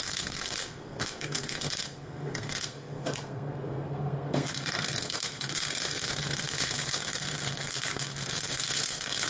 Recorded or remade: remade